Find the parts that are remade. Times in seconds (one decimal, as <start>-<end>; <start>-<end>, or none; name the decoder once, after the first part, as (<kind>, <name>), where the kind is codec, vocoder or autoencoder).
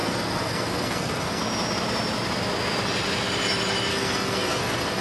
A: 0.0-1.4 (codec, SNAC); 3.9-5.0